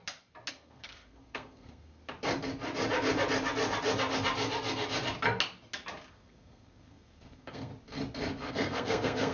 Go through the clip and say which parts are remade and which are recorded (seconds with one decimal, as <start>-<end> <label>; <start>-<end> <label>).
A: 0.0-0.5 recorded; 0.5-2.0 remade; 2.0-6.1 recorded; 6.1-7.7 remade; 7.7-8.5 recorded; 8.5-9.3 remade